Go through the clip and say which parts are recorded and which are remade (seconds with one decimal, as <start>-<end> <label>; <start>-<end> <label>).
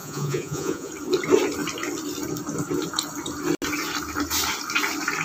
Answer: 0.0-0.9 remade; 0.9-5.2 recorded